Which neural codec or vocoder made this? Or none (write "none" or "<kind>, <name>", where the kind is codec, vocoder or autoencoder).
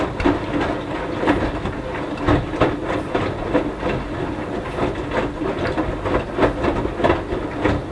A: none